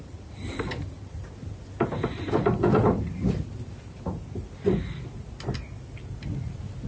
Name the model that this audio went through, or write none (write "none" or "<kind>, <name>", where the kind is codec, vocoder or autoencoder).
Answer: none